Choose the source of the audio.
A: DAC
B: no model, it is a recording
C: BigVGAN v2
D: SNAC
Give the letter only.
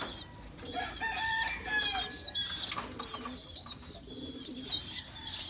B